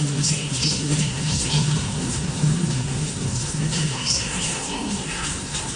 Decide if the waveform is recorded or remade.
remade